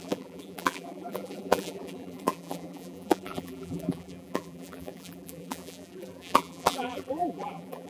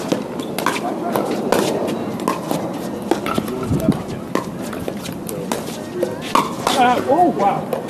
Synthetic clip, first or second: first